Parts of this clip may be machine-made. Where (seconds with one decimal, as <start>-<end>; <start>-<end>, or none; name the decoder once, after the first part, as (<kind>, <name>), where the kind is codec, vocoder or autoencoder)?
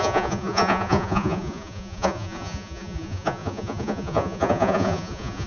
0.0-5.5 (vocoder, Vocos)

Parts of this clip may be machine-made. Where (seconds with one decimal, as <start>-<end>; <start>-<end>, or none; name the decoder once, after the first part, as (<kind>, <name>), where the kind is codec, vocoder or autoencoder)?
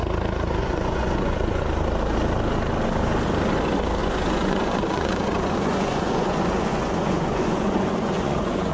0.6-1.6 (vocoder, Vocos); 4.0-8.7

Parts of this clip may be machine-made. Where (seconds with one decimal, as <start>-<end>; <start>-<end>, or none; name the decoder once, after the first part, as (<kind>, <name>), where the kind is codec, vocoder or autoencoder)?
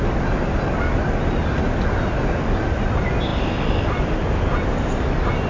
none